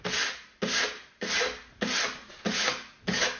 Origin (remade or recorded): recorded